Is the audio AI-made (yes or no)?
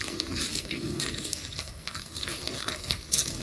yes